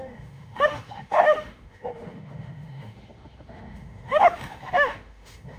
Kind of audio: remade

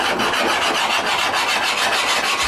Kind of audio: recorded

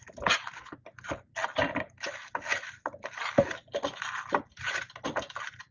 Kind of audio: recorded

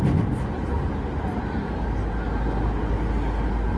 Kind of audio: recorded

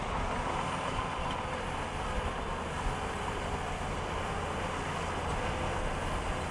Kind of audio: recorded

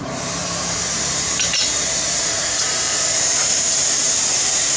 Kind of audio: remade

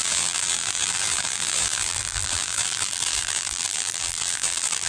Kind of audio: remade